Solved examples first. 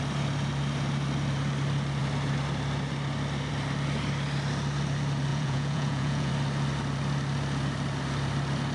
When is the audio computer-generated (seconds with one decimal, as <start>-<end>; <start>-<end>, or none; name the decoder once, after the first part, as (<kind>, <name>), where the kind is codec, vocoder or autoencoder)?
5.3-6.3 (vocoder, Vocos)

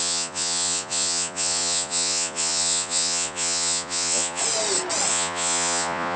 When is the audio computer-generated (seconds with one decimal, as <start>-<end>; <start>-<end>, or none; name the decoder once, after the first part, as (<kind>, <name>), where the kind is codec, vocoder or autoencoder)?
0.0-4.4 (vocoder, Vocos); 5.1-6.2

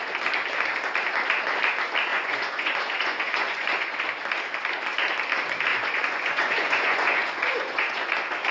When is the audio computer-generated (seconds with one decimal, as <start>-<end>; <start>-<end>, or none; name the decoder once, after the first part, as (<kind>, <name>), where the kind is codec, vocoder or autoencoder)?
2.1-4.0 (vocoder, Vocos); 5.7-8.1

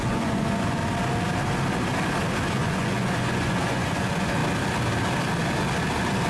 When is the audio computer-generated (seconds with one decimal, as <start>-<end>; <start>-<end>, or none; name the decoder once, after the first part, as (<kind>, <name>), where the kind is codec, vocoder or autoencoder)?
0.0-0.8 (vocoder, Vocos); 2.5-4.4